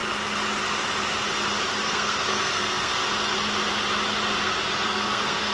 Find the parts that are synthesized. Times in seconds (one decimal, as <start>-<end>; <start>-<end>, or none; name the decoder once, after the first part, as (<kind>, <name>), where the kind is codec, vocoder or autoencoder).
1.8-2.9 (codec, SNAC); 4.4-5.5